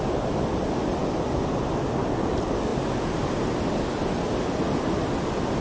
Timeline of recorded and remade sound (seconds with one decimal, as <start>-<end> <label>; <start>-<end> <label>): 0.0-5.6 recorded